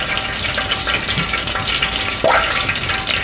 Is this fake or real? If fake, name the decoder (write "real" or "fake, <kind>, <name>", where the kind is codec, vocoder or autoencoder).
real